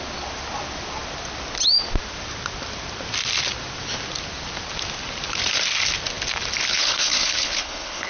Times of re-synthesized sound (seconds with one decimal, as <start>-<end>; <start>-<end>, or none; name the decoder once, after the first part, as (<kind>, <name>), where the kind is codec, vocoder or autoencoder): 6.7-8.1 (codec, HILCodec)

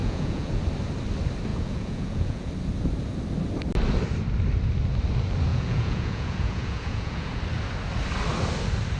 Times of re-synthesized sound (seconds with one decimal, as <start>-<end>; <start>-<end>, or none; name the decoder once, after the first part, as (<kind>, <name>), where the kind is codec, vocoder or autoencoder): 0.0-0.6 (vocoder, Vocos); 1.5-2.5; 5.5-7.4

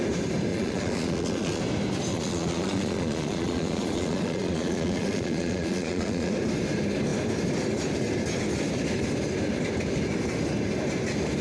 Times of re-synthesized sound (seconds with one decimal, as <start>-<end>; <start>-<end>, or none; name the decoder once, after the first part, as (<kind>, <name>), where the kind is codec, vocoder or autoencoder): 0.5-1.6 (vocoder, Vocos); 2.1-6.3

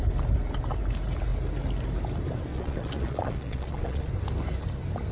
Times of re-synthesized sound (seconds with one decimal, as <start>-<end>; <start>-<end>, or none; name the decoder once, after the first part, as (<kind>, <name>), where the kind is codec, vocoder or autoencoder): 2.5-4.1 (vocoder, Vocos)

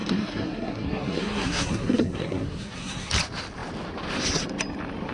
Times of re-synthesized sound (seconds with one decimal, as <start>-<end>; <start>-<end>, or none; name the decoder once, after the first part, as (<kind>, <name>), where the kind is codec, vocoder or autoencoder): 0.0-3.1 (codec, SNAC)

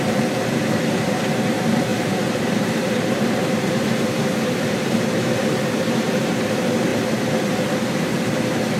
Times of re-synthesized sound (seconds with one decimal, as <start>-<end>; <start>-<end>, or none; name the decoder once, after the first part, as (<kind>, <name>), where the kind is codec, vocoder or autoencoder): 0.0-6.9 (vocoder, BigVGAN v2); 8.3-8.8

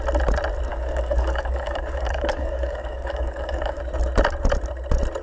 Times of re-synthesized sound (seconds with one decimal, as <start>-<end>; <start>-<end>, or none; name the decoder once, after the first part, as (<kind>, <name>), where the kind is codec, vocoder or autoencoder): 0.7-3.8 (codec, DAC)

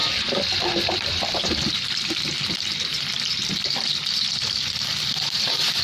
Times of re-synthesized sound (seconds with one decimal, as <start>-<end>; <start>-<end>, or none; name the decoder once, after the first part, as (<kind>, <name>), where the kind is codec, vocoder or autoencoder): 0.0-5.8 (vocoder, BigVGAN v2)